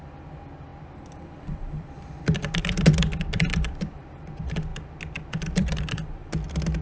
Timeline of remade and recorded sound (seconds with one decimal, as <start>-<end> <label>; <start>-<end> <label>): 0.0-0.7 recorded; 0.7-2.6 remade; 2.6-6.8 recorded